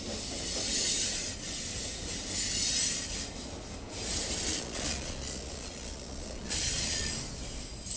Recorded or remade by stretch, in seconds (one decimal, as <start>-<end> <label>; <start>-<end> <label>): 0.0-4.5 recorded; 4.5-7.1 remade; 7.1-8.0 recorded